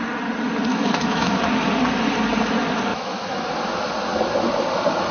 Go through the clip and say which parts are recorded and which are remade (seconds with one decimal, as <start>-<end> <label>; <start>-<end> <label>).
0.0-0.7 recorded; 0.7-1.4 remade; 1.4-2.9 recorded; 2.9-3.5 remade; 3.5-5.1 recorded